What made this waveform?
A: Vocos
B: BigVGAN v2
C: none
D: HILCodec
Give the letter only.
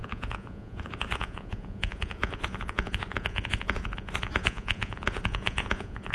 A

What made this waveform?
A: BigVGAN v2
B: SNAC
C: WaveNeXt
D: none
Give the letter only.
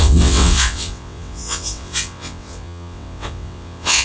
C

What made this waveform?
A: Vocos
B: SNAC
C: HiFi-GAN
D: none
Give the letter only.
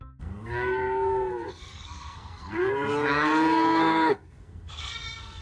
B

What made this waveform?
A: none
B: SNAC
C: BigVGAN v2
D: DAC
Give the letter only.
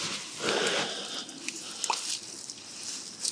A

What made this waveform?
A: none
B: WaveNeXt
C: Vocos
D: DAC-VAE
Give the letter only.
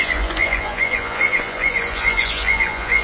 C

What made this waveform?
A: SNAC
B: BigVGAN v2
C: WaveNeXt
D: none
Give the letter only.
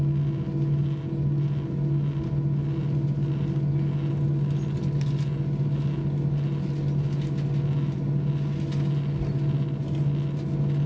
D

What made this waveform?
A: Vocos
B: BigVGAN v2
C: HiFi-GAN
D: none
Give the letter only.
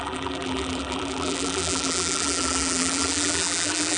B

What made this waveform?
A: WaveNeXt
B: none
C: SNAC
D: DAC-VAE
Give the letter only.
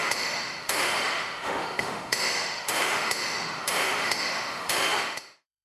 D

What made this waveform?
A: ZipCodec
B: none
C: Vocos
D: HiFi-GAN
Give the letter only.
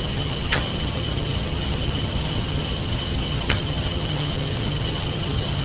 D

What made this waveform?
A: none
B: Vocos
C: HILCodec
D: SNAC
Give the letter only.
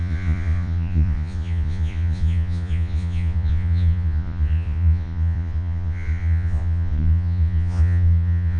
B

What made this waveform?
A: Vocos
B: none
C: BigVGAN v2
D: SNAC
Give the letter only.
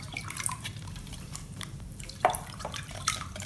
C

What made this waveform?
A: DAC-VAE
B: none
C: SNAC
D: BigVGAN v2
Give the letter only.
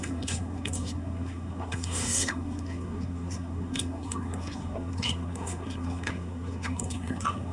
C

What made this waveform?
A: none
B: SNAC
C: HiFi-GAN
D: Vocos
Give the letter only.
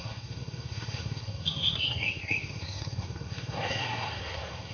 B